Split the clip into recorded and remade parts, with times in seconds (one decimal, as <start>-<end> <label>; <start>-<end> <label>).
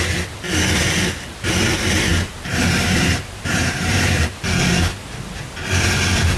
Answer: 0.0-2.1 recorded; 2.1-4.4 remade; 4.4-6.4 recorded